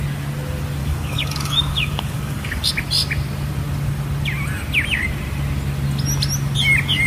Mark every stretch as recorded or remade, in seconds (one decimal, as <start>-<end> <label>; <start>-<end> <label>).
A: 0.0-0.8 recorded; 0.8-2.7 remade; 2.7-7.1 recorded